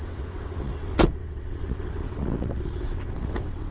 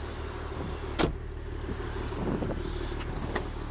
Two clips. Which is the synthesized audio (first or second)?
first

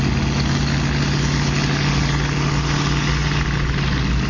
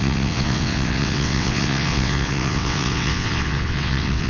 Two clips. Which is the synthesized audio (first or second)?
second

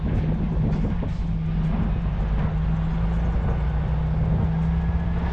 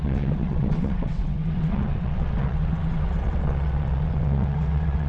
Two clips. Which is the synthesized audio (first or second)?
second